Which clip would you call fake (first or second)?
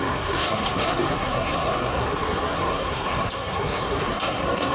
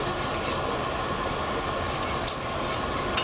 first